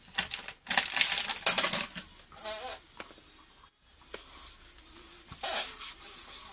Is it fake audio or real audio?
real